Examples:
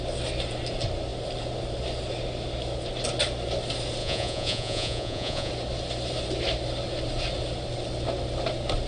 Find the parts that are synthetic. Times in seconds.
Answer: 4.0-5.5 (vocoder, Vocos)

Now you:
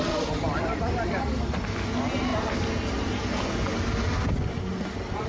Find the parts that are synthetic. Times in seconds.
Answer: none